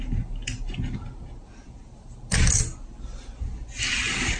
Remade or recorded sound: recorded